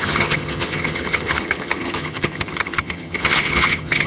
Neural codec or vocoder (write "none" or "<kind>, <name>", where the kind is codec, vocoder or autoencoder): vocoder, HiFi-GAN